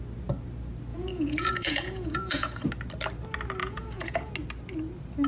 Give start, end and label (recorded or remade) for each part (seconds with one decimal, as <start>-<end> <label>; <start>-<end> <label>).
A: 0.0-0.9 recorded; 0.9-2.7 remade; 2.7-3.6 recorded; 3.6-4.3 remade; 4.3-5.3 recorded